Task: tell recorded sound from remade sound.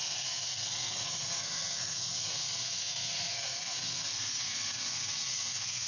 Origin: remade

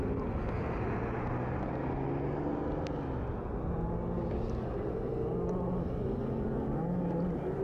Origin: recorded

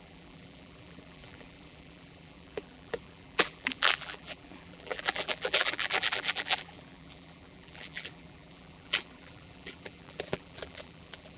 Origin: remade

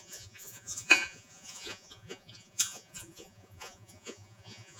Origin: remade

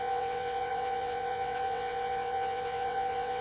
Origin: remade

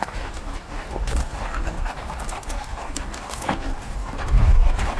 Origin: remade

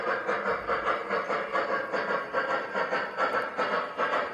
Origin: recorded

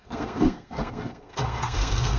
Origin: remade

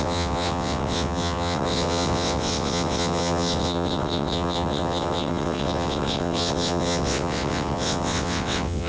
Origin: remade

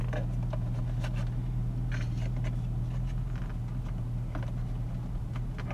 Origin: recorded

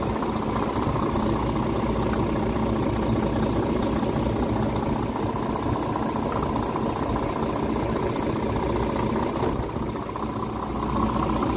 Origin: recorded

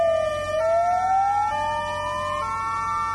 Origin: recorded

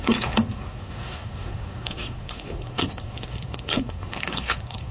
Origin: remade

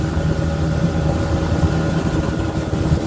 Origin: remade